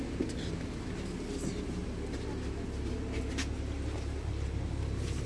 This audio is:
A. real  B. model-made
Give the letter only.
A